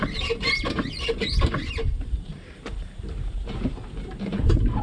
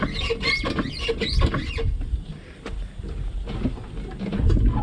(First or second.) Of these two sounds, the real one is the second